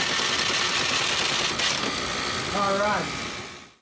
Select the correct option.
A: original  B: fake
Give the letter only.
A